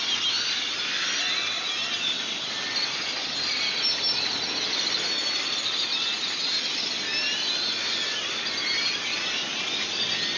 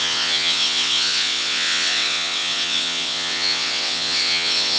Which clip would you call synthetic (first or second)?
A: second